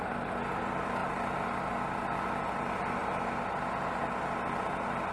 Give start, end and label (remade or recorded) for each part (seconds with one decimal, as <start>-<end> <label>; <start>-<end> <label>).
0.0-5.1 recorded